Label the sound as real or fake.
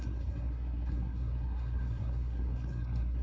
fake